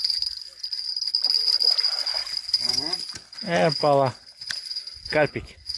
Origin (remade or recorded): recorded